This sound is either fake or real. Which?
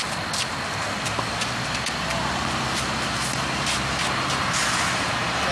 real